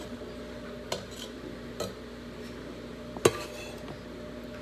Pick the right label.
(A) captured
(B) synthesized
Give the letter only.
A